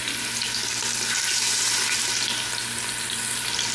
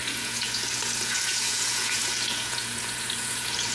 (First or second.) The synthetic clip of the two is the second